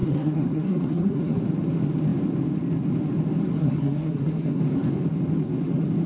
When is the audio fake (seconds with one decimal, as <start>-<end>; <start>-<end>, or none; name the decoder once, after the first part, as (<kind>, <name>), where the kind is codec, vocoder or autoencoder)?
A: 0.0-1.4 (codec, SNAC); 3.6-4.6